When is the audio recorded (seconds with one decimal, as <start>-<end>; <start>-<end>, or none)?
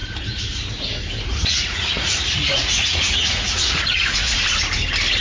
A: 0.0-1.3; 4.4-5.2